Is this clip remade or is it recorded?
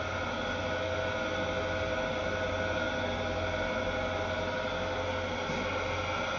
recorded